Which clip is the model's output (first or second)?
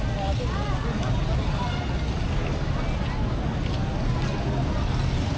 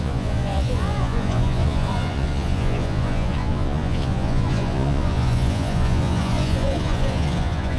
second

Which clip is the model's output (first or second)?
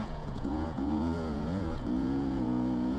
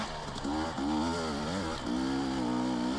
first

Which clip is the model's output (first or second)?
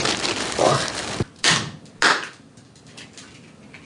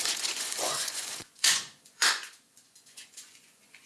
second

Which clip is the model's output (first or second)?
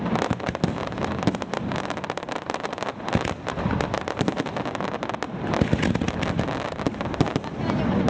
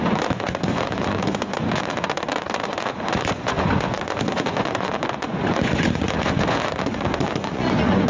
second